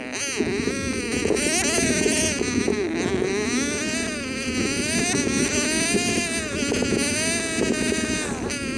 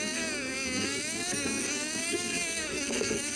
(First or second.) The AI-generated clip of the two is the second